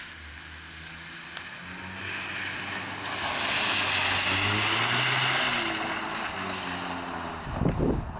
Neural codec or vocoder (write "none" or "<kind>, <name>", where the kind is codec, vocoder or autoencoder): none